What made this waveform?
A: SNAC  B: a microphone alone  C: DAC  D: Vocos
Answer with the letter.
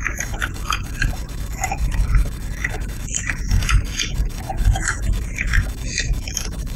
C